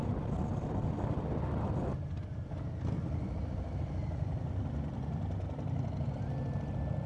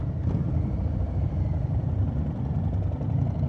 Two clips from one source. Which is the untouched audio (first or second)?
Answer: first